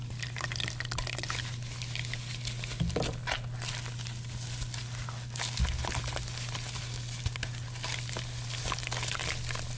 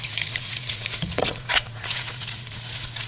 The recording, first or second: first